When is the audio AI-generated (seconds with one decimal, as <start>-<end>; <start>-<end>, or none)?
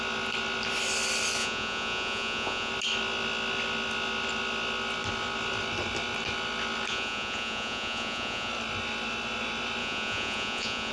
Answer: 1.4-2.7; 6.9-8.5; 9.8-10.9